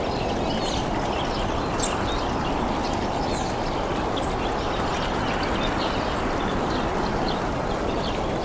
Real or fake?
real